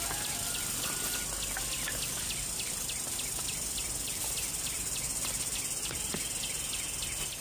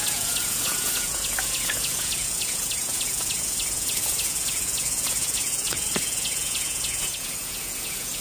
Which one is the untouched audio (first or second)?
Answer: first